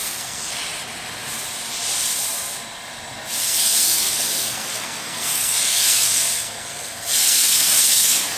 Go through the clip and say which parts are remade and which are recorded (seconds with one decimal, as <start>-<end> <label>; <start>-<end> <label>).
0.0-0.6 remade; 0.6-3.4 recorded; 3.4-8.4 remade